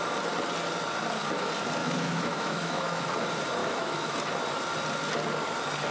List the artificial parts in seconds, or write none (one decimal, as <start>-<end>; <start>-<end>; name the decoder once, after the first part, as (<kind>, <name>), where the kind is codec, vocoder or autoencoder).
1.8-3.1 (autoencoder, DAC-VAE); 3.6-4.1